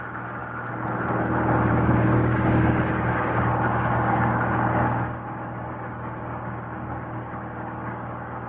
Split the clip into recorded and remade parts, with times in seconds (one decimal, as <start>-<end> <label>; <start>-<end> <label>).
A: 0.0-0.4 remade; 0.4-1.7 recorded; 1.7-8.5 remade

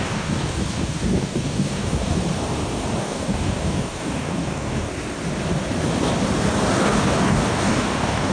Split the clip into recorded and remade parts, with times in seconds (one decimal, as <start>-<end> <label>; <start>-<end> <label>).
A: 0.0-2.2 remade; 2.2-3.0 recorded; 3.0-4.9 remade; 4.9-6.8 recorded; 6.8-8.3 remade

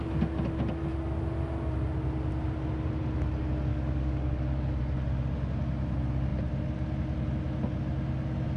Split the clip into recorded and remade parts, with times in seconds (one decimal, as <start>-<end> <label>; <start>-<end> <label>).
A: 0.0-3.7 recorded; 3.7-4.8 remade; 4.8-8.6 recorded

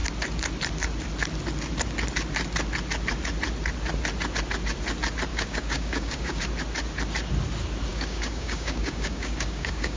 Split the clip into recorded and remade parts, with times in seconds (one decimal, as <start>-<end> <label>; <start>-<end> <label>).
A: 0.0-5.3 recorded; 5.3-6.4 remade; 6.4-7.9 recorded; 7.9-10.0 remade

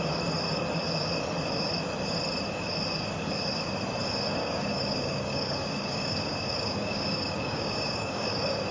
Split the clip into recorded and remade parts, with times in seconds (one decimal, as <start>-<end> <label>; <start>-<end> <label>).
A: 0.0-4.4 recorded; 4.4-8.7 remade

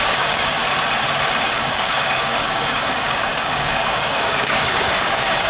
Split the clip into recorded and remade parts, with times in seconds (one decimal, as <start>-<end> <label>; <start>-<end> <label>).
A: 0.0-0.6 remade; 0.6-1.5 recorded; 1.5-5.5 remade

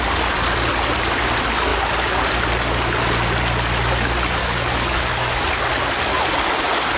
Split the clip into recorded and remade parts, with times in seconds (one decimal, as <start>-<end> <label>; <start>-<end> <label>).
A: 0.0-4.4 recorded; 4.4-5.5 remade; 5.5-7.0 recorded

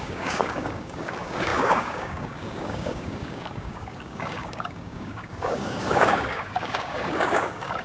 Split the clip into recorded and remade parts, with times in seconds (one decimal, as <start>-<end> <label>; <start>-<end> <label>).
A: 0.0-7.8 remade